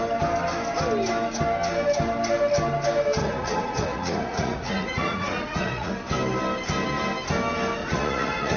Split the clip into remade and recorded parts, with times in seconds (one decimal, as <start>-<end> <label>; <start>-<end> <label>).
0.0-3.2 recorded; 3.2-5.9 remade; 5.9-7.8 recorded; 7.8-8.6 remade

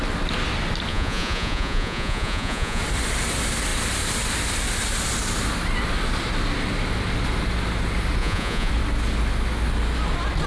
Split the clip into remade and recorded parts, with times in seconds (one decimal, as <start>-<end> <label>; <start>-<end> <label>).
0.0-0.9 recorded; 0.9-2.8 remade; 2.8-8.2 recorded; 8.2-8.7 remade; 8.7-10.5 recorded

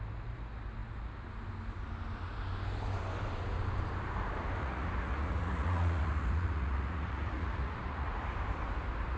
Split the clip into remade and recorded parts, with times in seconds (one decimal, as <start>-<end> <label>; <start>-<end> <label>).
0.0-4.6 recorded; 4.6-8.2 remade; 8.2-9.2 recorded

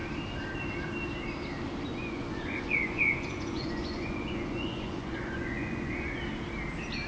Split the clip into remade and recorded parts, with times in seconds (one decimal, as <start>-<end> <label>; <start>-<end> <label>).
0.0-1.9 recorded; 1.9-6.2 remade; 6.2-7.1 recorded

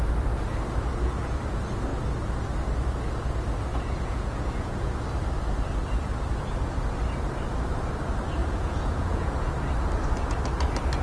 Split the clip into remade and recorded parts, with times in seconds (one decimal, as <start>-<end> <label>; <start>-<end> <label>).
0.0-3.7 recorded; 3.7-5.0 remade; 5.0-8.4 recorded; 8.4-9.5 remade; 9.5-11.0 recorded

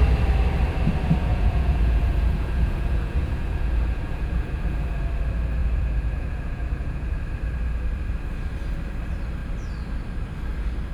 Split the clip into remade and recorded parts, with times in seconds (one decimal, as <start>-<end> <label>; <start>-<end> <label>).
0.0-1.3 recorded; 1.3-5.1 remade; 5.1-5.6 recorded; 5.6-7.2 remade; 7.2-10.9 recorded